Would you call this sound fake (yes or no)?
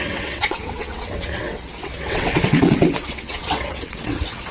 yes